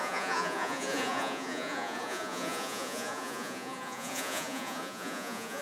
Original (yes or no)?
no